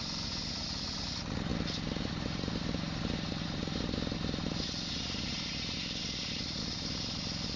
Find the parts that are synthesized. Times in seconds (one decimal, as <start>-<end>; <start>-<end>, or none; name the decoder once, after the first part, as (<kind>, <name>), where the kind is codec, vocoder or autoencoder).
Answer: 0.0-1.5 (vocoder, BigVGAN v2); 2.1-7.6